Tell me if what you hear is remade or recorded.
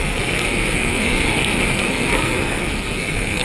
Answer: remade